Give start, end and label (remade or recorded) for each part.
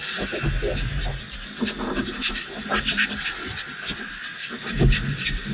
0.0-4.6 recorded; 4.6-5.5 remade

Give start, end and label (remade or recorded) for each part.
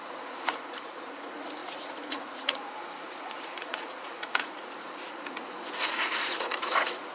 0.0-7.1 remade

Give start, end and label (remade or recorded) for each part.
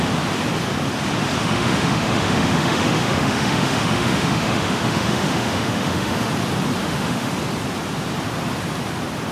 0.0-1.4 recorded; 1.4-6.3 remade; 6.3-6.8 recorded; 6.8-7.3 remade; 7.3-9.3 recorded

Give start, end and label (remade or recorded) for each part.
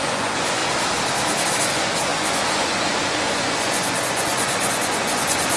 0.0-0.6 remade; 0.6-1.5 recorded; 1.5-5.6 remade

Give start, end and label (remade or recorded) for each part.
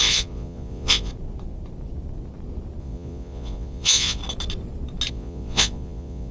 0.0-1.1 remade; 1.1-2.8 recorded; 2.8-4.2 remade; 4.2-5.1 recorded; 5.1-6.3 remade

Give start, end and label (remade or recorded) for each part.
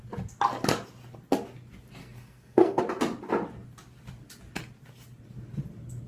0.0-2.0 recorded; 2.0-2.8 remade; 2.8-6.1 recorded